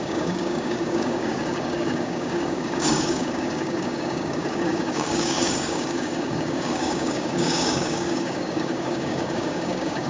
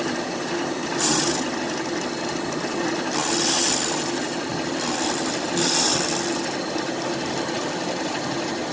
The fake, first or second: first